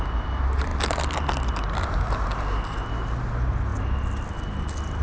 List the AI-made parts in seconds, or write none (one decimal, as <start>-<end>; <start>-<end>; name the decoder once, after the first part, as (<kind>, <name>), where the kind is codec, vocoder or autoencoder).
none